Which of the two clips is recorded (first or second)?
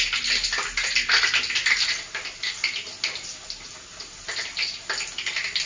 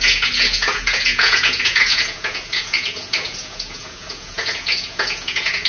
first